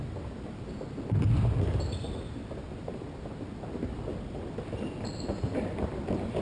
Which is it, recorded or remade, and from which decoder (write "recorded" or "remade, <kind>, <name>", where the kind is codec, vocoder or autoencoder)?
recorded